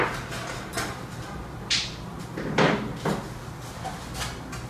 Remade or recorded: recorded